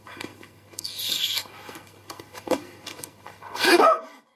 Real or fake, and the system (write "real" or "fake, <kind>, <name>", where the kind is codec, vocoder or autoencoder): fake, codec, SNAC